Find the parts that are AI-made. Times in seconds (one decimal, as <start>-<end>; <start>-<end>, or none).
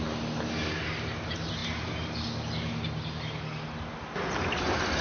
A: 0.0-1.6; 4.6-5.0